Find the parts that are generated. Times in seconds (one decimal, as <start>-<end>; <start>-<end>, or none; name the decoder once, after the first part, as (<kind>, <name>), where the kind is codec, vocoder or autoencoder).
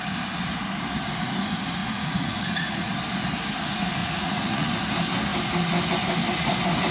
1.8-2.9 (vocoder, Vocos); 4.0-4.7